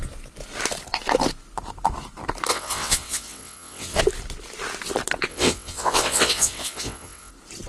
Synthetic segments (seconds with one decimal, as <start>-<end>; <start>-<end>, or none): 2.5-4.0; 5.3-7.3